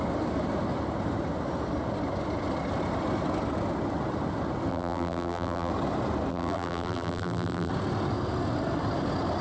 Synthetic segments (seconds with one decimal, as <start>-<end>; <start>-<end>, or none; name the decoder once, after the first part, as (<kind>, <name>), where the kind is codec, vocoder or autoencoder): 4.7-5.7 (vocoder, BigVGAN v2); 6.3-7.7